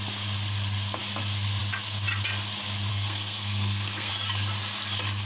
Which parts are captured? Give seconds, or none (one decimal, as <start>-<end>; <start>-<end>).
0.0-2.9; 4.1-5.3